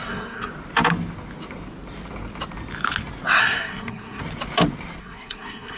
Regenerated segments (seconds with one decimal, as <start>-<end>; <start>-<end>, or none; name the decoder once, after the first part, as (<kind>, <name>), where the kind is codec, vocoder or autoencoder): 0.0-0.5 (codec, SNAC); 3.4-4.2; 5.0-5.8